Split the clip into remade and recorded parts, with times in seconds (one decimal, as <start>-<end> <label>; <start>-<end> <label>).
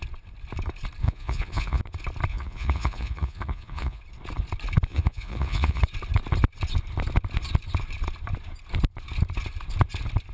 0.0-1.0 recorded; 1.0-1.8 remade; 1.8-2.3 recorded; 2.3-4.0 remade; 4.0-4.9 recorded; 4.9-5.8 remade; 5.8-10.3 recorded